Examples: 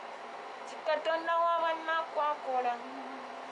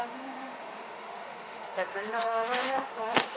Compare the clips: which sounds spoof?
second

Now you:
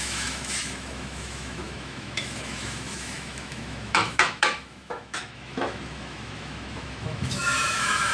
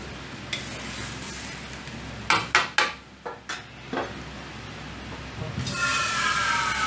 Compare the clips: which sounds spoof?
first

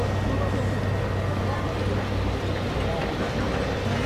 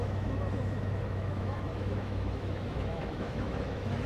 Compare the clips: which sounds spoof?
second